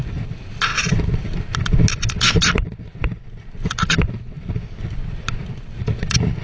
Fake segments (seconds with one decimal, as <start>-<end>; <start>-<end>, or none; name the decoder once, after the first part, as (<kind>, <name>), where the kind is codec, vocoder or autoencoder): none